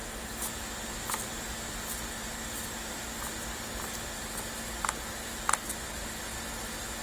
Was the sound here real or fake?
real